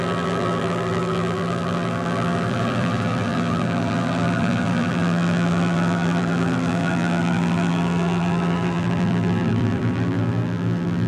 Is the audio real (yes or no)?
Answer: no